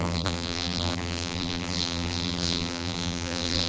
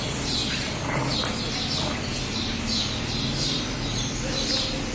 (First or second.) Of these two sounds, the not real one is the first